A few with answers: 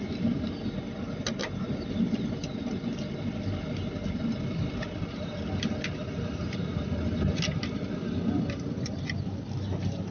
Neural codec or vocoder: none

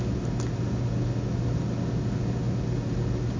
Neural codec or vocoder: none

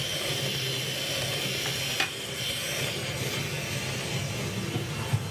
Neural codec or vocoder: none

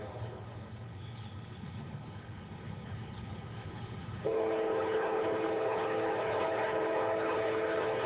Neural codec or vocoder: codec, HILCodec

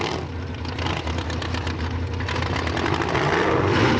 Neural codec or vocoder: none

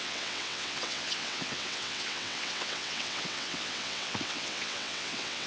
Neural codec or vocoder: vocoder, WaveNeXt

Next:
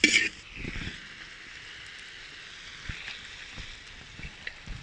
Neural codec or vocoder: none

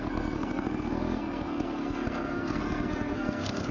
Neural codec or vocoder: codec, SNAC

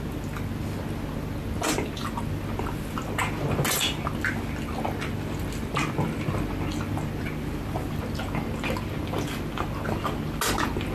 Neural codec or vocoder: none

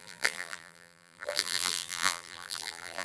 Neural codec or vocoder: vocoder, BigVGAN v2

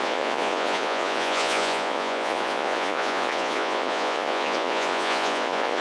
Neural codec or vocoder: vocoder, Vocos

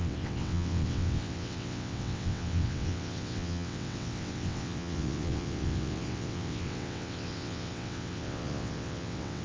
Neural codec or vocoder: vocoder, WaveNeXt